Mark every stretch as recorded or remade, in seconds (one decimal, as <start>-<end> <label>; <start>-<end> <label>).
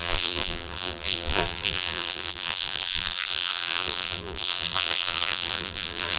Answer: 0.0-6.2 remade